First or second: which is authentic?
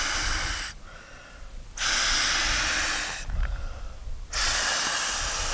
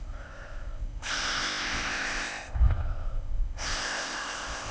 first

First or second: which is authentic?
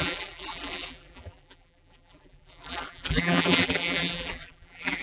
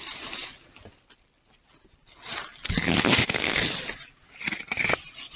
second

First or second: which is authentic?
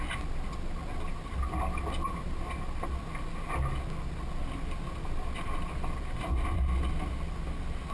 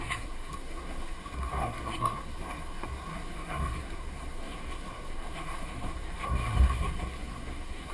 first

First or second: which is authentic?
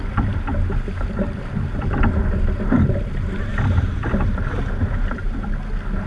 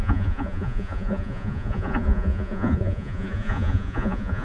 first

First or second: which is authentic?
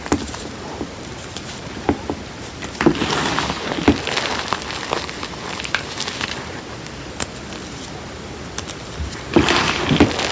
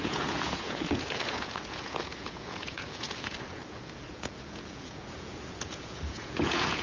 first